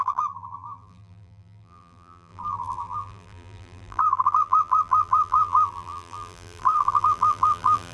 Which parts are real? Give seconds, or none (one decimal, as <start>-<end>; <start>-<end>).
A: none